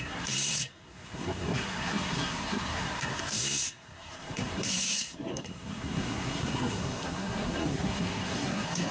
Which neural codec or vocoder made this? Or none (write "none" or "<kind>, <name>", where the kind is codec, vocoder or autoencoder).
codec, SNAC